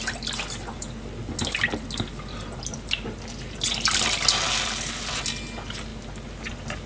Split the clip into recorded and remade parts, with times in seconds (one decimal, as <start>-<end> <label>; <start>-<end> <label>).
0.0-6.9 recorded